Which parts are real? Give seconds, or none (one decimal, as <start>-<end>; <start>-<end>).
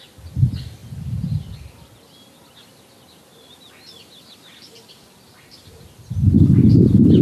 0.0-7.2